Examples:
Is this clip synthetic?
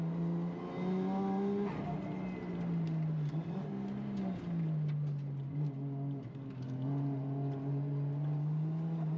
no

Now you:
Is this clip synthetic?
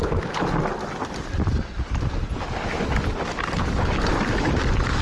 yes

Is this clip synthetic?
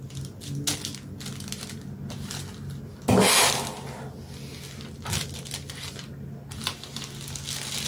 no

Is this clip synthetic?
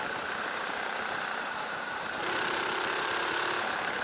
yes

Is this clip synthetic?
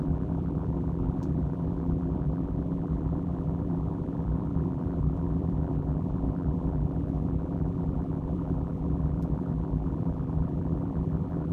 yes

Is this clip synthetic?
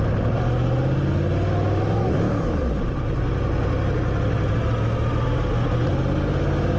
no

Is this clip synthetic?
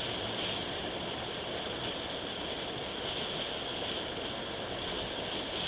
no